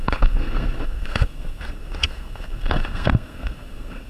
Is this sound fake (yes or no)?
yes